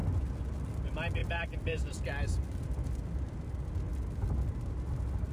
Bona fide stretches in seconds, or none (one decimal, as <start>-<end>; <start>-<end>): 0.0-1.2; 3.0-5.3